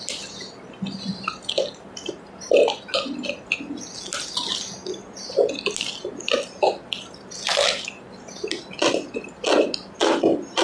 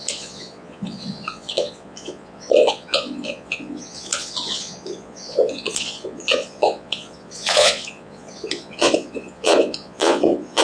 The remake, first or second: second